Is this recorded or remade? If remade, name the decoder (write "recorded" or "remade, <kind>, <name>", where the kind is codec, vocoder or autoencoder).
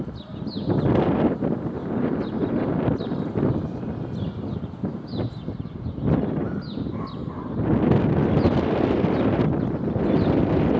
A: recorded